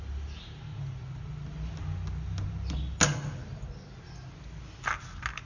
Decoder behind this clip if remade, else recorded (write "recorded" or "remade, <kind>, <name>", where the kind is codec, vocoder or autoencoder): recorded